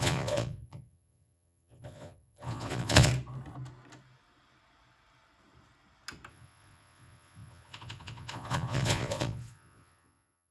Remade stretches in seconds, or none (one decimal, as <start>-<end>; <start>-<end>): 0.0-3.1; 6.3-10.5